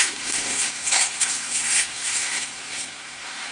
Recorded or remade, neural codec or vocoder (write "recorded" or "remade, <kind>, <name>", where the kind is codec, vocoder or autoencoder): remade, codec, SNAC